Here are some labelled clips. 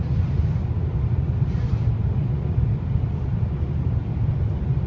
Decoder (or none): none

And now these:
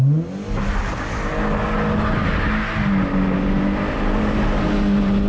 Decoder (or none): none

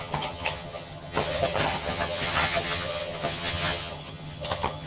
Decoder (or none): vocoder, HiFi-GAN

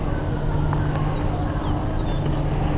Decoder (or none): none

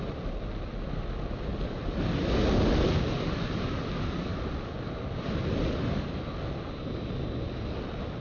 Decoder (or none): none